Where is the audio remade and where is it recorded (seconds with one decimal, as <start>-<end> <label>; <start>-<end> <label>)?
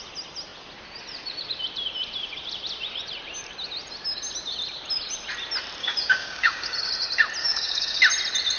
0.0-5.8 recorded; 5.8-6.9 remade; 6.9-7.4 recorded; 7.4-8.0 remade; 8.0-8.6 recorded